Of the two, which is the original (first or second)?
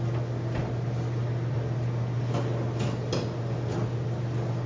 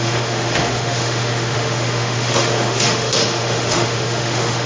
first